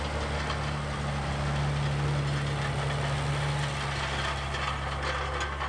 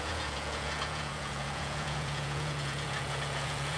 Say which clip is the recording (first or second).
first